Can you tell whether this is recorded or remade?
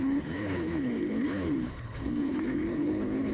remade